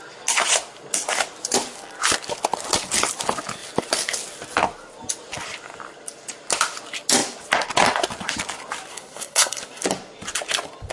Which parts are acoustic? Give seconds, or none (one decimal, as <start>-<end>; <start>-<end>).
0.0-8.9; 9.6-10.9